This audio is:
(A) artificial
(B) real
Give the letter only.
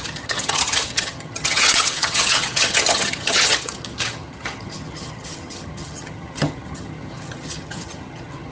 A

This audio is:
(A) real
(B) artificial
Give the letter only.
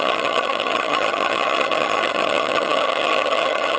B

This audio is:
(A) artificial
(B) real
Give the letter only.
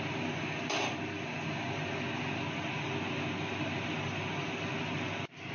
B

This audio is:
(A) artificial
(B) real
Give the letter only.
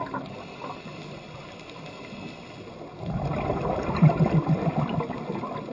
B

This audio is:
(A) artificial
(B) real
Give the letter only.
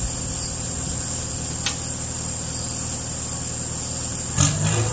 B